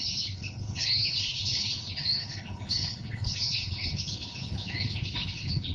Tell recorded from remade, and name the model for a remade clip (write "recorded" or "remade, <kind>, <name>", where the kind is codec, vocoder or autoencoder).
remade, codec, HILCodec